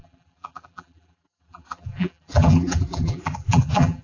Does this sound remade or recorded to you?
remade